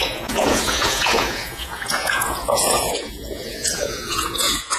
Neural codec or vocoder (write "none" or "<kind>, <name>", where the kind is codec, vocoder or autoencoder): vocoder, Vocos